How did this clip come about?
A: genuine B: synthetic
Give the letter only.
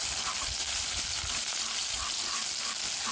A